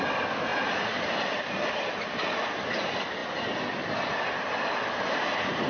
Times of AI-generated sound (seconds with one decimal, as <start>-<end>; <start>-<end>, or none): none

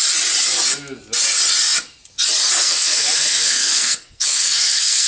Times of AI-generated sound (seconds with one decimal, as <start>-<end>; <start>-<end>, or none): 2.6-5.1

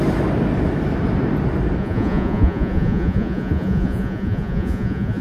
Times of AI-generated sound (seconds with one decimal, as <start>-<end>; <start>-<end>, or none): 1.8-5.2